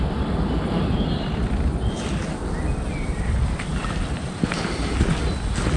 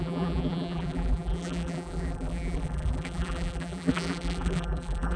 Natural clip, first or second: first